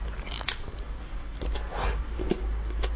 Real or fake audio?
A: real